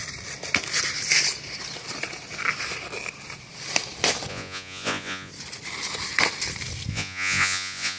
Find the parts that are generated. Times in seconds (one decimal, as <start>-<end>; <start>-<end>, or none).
4.3-5.3; 6.9-8.0

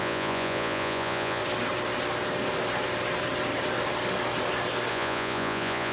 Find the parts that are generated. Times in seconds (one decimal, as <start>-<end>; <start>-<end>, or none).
0.0-1.4; 4.9-5.9

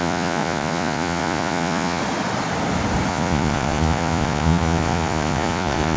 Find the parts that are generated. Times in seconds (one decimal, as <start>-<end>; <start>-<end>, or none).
0.0-2.0; 3.1-6.0

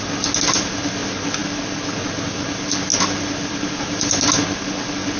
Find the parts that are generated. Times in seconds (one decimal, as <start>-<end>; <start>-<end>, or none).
none

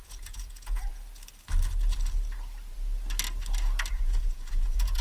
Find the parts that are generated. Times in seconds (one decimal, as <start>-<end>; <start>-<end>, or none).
0.0-0.9; 3.9-5.0

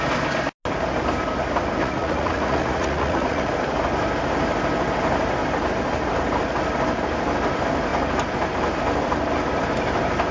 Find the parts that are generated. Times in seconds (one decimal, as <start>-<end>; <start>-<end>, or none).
1.8-3.5

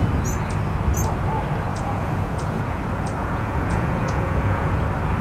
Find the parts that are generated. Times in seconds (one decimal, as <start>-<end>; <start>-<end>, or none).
1.7-2.8; 3.2-4.8

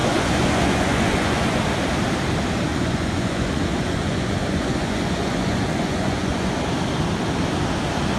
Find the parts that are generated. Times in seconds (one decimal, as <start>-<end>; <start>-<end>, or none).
0.0-1.6; 2.7-6.5